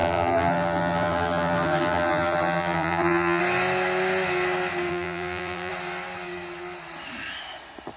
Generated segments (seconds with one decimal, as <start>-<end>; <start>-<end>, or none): 0.0-3.4; 4.9-5.7